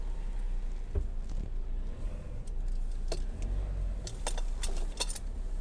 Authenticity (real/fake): real